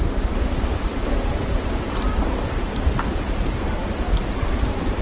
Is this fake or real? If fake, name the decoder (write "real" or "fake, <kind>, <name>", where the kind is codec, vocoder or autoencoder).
fake, vocoder, BigVGAN v2